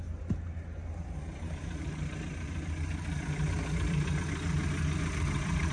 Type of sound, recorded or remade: recorded